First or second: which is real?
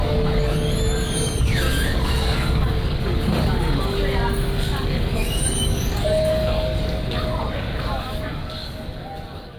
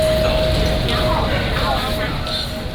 second